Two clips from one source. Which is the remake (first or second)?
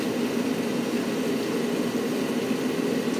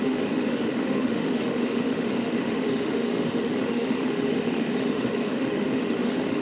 second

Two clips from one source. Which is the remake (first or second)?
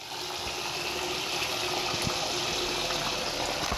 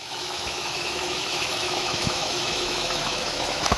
second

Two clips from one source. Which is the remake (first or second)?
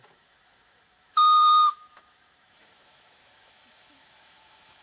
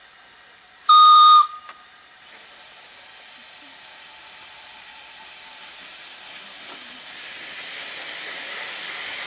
first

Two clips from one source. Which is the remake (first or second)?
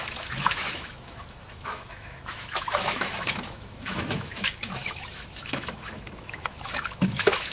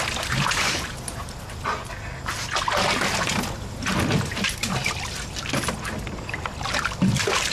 first